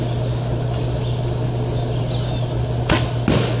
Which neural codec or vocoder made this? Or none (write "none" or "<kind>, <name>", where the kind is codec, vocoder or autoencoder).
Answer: none